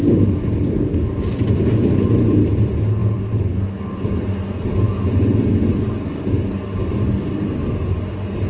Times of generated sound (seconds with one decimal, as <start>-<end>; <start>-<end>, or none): none